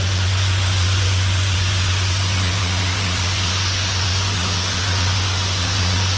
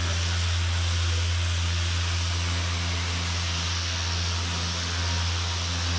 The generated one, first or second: first